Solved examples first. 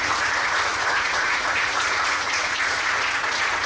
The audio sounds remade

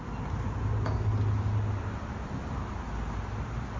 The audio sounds recorded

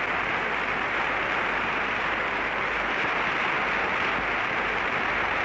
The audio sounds recorded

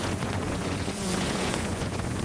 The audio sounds remade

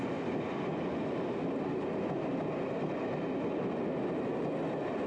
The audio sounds recorded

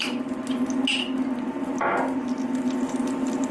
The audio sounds recorded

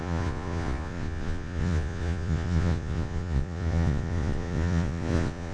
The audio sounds remade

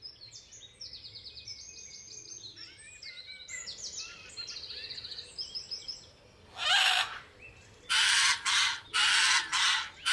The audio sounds recorded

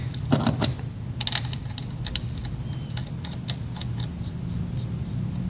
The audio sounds recorded